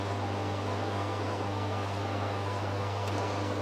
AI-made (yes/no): yes